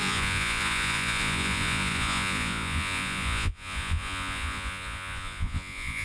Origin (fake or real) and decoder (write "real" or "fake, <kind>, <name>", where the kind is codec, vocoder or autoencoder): fake, vocoder, Vocos